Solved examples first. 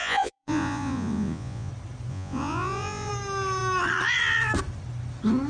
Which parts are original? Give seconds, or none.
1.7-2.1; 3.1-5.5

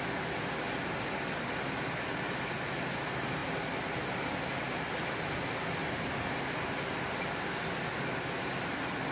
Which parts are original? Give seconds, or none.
0.0-9.1

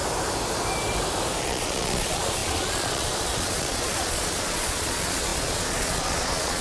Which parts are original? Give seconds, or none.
0.0-1.4

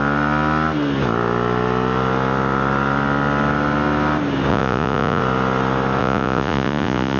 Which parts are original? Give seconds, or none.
0.0-4.5; 5.2-6.0

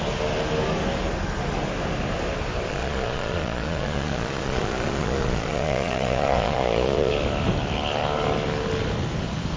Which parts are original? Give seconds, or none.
0.0-2.7; 7.1-9.6

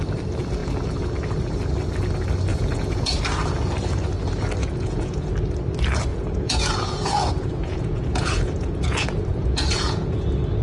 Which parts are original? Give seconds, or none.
0.0-2.5; 3.2-4.6; 5.3-6.1; 10.2-10.6

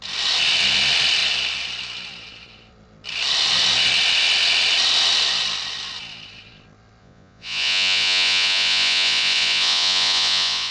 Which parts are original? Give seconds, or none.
0.0-7.0